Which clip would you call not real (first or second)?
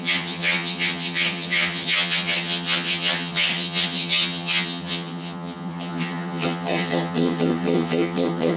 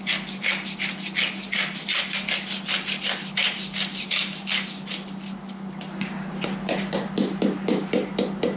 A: first